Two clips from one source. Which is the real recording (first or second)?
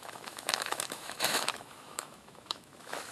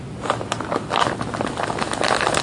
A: second